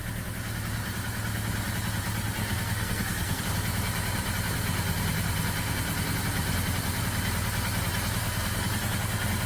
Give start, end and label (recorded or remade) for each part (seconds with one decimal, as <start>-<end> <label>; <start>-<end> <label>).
0.0-2.4 recorded; 2.4-3.4 remade; 3.4-8.2 recorded; 8.2-8.7 remade; 8.7-9.5 recorded